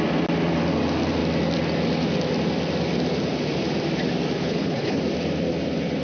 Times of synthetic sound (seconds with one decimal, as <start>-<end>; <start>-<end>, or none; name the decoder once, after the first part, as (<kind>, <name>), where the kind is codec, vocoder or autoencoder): 4.4-5.0 (codec, HILCodec)